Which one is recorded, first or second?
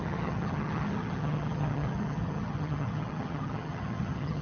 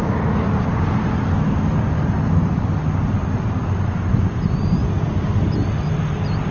second